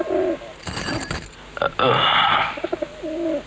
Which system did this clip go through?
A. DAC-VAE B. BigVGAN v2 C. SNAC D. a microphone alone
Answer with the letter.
D